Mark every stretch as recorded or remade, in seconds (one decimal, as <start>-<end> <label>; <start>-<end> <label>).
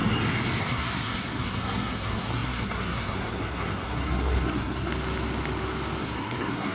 0.0-0.6 recorded; 0.6-4.9 remade; 4.9-6.0 recorded; 6.0-6.7 remade